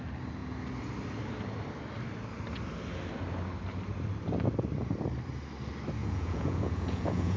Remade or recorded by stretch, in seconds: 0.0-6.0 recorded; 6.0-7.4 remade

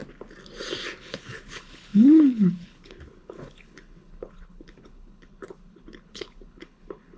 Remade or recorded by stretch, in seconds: 0.0-1.0 recorded; 1.0-7.2 remade

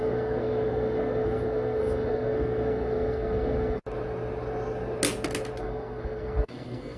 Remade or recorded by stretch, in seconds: 0.0-3.8 remade; 3.8-5.6 recorded; 5.6-7.0 remade

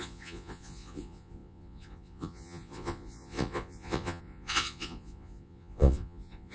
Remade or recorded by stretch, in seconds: 0.0-6.5 remade

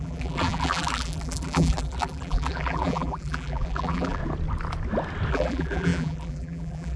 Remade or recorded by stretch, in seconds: 0.0-4.2 remade; 4.2-5.3 recorded; 5.3-7.0 remade